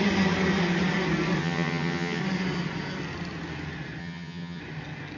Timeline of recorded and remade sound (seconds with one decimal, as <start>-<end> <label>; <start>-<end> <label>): 0.0-1.4 recorded; 1.4-2.2 remade; 2.2-4.0 recorded; 4.0-4.6 remade; 4.6-5.2 recorded